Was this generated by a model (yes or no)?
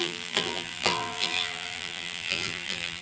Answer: yes